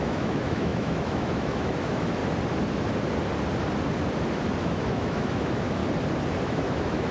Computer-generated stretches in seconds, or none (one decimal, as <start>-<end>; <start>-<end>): 0.0-2.2; 4.6-5.8; 6.4-7.1